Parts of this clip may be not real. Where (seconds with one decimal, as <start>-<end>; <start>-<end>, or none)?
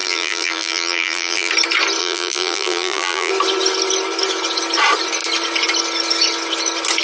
0.0-1.5; 2.0-3.3